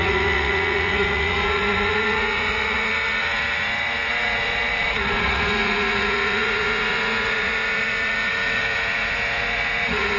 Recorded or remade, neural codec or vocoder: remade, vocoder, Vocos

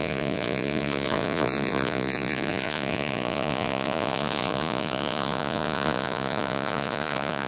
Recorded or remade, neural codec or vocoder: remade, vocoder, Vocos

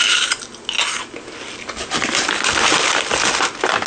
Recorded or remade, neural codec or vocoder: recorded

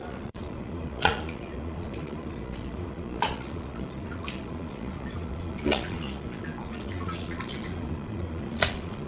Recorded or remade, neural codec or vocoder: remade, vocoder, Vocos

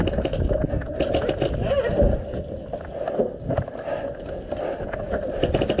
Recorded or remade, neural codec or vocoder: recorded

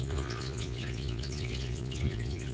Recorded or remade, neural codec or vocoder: remade, vocoder, Vocos